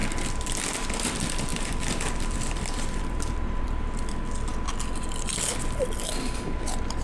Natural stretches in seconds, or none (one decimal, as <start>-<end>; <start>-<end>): 0.0-0.7; 4.5-7.0